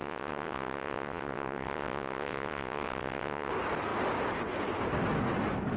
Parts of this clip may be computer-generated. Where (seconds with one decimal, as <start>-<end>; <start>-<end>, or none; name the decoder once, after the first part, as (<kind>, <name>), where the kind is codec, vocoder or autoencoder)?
0.0-3.5 (vocoder, WaveNeXt)